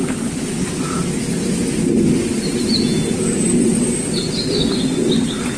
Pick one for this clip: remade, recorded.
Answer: recorded